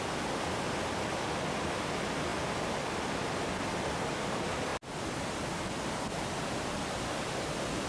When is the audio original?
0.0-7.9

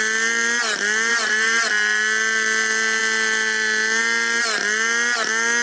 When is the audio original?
0.0-1.1; 1.7-5.6

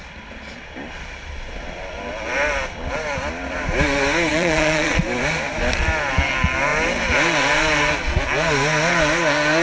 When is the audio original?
0.0-4.3; 5.0-9.6